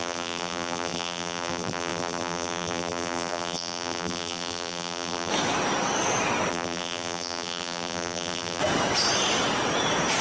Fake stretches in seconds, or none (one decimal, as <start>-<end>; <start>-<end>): 0.0-5.3; 6.5-8.6